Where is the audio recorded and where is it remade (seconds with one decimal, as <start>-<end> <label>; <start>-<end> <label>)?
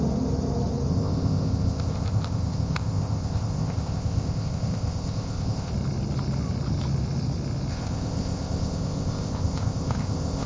0.0-0.9 recorded; 0.9-5.7 remade; 5.7-7.7 recorded; 7.7-10.5 remade